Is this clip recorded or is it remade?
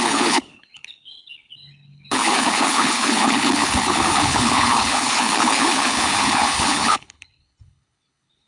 remade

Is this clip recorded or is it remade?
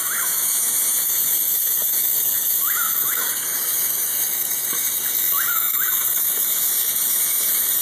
remade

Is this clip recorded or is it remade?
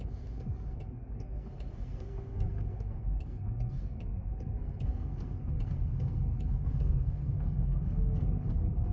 remade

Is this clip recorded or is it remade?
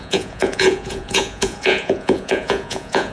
remade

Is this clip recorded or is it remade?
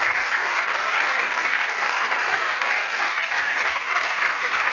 remade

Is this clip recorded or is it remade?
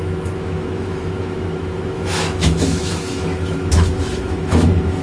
remade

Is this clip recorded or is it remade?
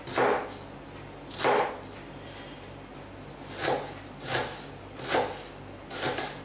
recorded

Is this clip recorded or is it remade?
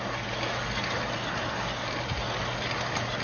recorded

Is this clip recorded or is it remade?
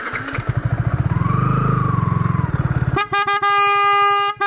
recorded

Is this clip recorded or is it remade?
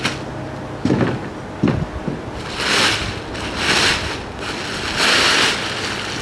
recorded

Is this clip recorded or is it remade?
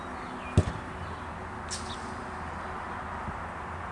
recorded